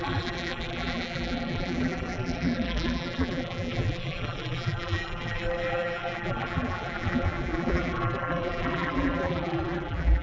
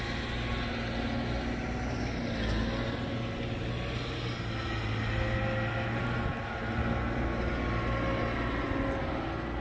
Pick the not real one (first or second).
first